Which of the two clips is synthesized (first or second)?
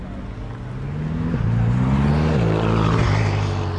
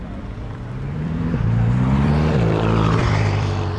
second